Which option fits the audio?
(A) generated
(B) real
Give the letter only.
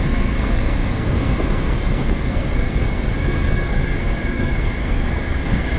A